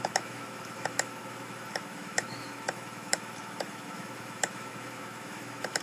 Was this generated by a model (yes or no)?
yes